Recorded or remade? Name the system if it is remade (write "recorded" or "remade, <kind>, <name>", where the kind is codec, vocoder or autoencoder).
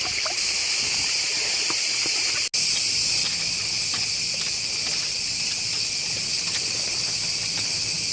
recorded